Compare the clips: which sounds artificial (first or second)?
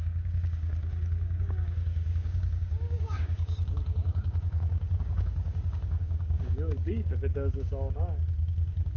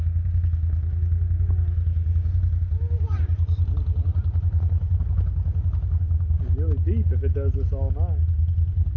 first